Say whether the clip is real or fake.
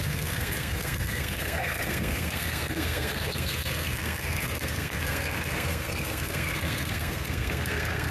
fake